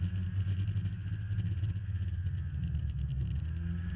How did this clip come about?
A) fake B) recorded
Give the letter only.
B